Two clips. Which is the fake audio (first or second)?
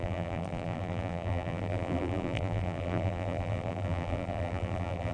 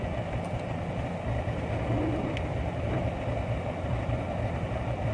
first